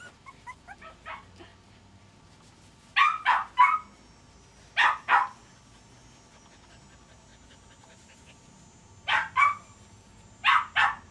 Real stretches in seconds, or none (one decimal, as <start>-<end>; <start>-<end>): 0.0-11.1